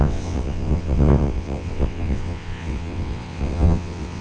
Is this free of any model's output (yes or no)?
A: no